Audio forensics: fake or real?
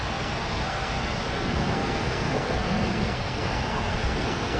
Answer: fake